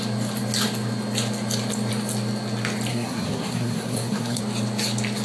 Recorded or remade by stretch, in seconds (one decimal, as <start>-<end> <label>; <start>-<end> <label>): 0.0-2.9 recorded; 2.9-4.4 remade; 4.4-5.2 recorded